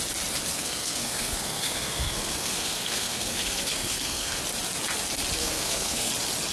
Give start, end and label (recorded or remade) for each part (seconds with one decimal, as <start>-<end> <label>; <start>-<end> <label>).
0.0-0.5 recorded; 0.5-4.4 remade; 4.4-5.4 recorded; 5.4-6.1 remade; 6.1-6.5 recorded